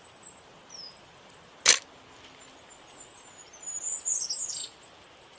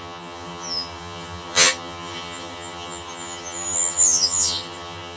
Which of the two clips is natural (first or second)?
first